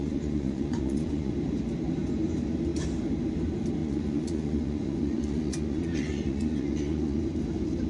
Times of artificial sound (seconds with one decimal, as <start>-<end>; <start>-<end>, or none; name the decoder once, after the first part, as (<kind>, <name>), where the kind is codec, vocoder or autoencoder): 0.0-1.3 (vocoder, Vocos); 3.8-7.2